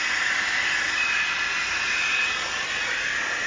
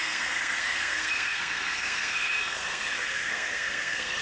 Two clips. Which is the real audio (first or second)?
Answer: first